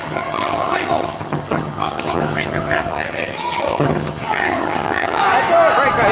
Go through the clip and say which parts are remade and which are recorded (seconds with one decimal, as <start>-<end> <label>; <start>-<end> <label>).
0.0-5.2 remade; 5.2-6.1 recorded